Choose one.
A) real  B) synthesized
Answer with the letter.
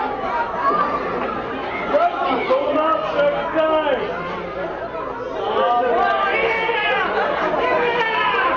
A